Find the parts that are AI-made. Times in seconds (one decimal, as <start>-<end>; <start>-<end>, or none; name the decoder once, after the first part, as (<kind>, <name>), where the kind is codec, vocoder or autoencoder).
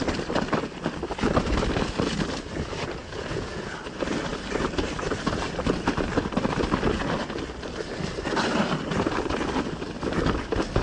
3.0-3.6 (vocoder, Vocos)